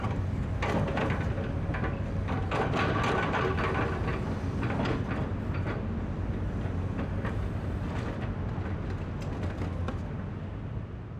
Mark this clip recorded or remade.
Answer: recorded